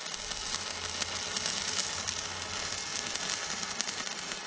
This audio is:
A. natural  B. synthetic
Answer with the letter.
A